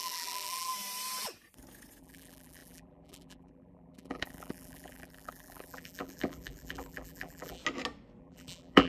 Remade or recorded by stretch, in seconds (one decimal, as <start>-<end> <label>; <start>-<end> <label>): 0.0-0.7 remade; 0.7-2.0 recorded; 2.0-7.6 remade; 7.6-8.2 recorded; 8.2-8.9 remade